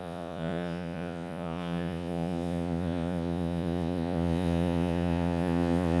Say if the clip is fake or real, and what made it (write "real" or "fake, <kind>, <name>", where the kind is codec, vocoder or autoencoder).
fake, vocoder, Vocos